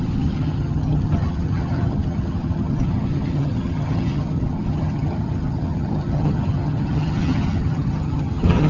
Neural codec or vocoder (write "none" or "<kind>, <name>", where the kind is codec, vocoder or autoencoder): vocoder, HiFi-GAN